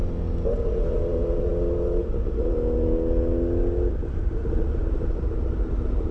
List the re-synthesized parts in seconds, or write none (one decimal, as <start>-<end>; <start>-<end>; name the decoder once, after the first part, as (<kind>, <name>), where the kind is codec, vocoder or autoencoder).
none